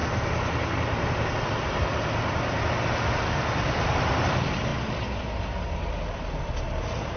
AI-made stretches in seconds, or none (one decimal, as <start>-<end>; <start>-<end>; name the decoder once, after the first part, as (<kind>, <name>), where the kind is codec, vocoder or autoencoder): 1.1-4.7 (vocoder, BigVGAN v2); 5.7-7.2

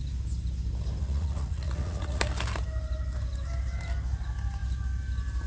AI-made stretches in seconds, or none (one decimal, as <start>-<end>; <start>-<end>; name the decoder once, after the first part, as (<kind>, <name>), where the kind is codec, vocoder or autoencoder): 1.0-2.2 (vocoder, Vocos)

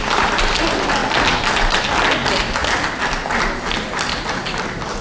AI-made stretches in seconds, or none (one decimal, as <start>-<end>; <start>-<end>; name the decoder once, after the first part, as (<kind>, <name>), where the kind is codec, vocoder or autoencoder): none

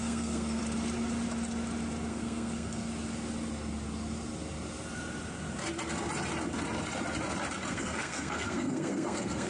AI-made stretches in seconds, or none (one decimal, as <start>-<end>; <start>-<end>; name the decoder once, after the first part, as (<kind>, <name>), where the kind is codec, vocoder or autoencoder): 0.0-0.6 (codec, SNAC); 2.1-2.9; 7.7-9.5

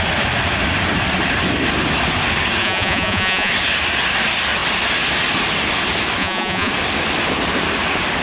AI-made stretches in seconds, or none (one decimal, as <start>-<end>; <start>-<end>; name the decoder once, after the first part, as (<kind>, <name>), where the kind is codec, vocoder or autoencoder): 2.6-3.5 (vocoder, Vocos); 6.2-6.7

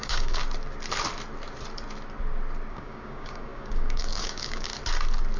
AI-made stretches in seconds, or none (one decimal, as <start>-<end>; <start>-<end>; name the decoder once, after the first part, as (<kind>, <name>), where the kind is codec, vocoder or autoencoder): 0.0-0.4 (codec, DAC); 2.7-4.7